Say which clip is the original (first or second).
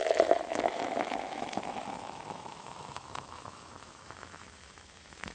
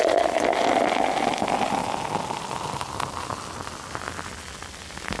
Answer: second